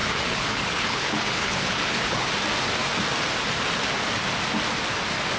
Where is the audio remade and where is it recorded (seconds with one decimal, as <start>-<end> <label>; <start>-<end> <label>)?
0.0-2.3 remade; 2.3-5.4 recorded